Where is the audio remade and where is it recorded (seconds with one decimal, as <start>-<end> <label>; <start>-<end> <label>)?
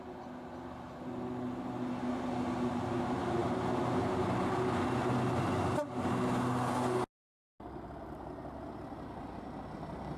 0.0-10.2 recorded